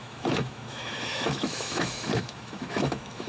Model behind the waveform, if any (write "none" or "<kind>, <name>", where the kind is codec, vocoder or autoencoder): autoencoder, DAC-VAE